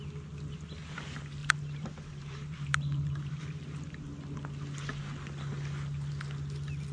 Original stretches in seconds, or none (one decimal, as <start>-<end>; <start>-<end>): 0.0-1.4; 3.4-6.9